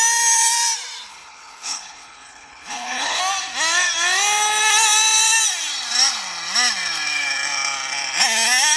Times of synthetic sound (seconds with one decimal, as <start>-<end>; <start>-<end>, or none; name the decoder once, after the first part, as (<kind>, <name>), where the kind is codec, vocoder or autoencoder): 1.1-3.2 (codec, HILCodec)